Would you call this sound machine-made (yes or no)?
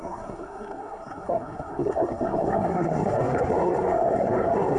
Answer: yes